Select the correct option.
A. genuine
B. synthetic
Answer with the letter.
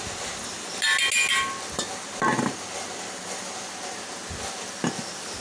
A